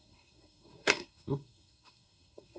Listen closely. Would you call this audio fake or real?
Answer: fake